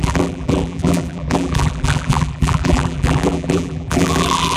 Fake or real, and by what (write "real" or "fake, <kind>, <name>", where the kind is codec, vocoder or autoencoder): fake, vocoder, BigVGAN v2